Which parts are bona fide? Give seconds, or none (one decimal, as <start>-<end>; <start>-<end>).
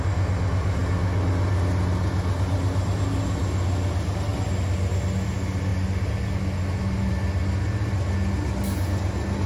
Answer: 0.0-9.5